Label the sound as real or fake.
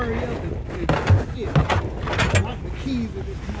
real